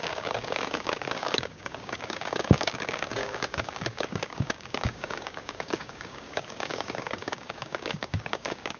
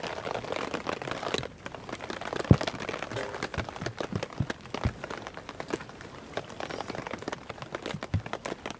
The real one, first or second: second